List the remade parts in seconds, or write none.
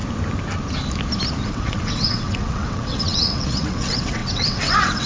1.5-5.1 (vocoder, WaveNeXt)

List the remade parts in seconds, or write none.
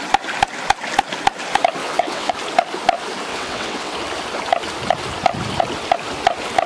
1.8-2.3 (vocoder, WaveNeXt); 3.3-3.9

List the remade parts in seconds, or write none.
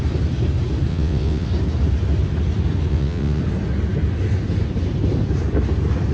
0.9-1.5 (vocoder, WaveNeXt); 2.9-3.4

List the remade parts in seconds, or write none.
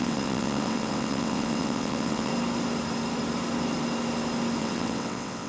0.0-2.3 (vocoder, WaveNeXt); 4.6-5.5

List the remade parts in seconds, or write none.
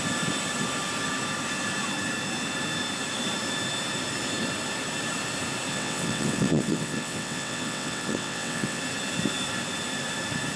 5.7-8.8 (vocoder, WaveNeXt)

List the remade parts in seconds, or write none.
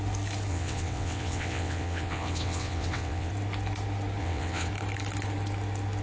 0.5-3.3 (vocoder, WaveNeXt); 4.2-4.7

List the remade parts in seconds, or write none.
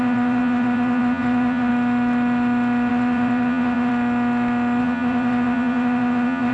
0.0-1.7 (vocoder, WaveNeXt); 2.9-3.9; 4.8-6.5